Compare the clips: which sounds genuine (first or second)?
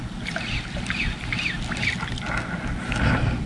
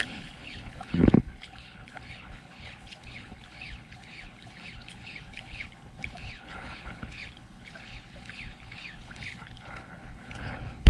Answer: first